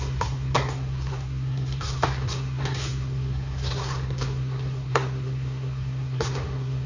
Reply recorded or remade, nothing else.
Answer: remade